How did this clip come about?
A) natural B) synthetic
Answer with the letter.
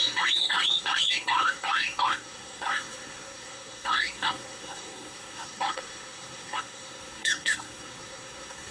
B